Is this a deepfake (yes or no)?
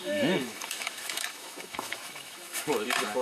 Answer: yes